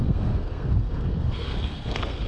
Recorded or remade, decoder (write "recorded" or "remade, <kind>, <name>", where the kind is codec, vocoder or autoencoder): remade, codec, SNAC